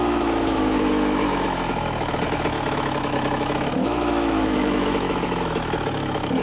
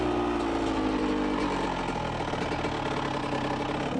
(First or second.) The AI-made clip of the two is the first